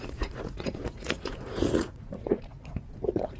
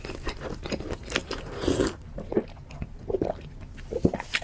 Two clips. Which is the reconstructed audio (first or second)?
first